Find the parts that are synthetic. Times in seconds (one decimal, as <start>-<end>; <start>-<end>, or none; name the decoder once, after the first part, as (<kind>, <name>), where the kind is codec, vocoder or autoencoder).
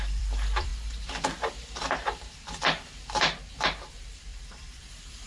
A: 0.0-0.7 (vocoder, BigVGAN v2); 3.9-5.3